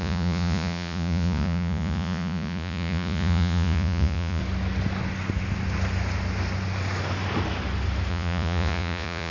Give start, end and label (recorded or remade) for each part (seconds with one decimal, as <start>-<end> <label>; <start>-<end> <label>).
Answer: 0.0-4.4 remade; 4.4-8.1 recorded; 8.1-9.3 remade